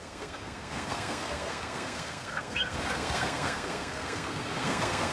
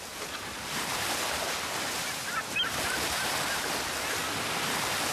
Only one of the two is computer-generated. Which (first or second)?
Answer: first